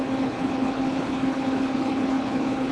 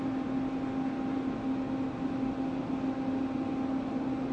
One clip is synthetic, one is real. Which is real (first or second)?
second